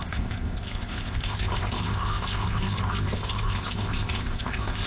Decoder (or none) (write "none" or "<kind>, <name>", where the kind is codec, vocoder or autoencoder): codec, ZipCodec